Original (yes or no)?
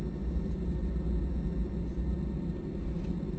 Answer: yes